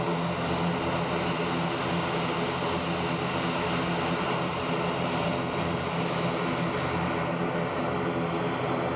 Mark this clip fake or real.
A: real